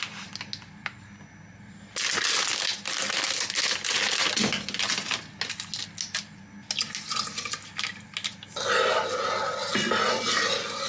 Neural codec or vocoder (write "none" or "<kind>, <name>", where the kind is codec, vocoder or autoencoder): none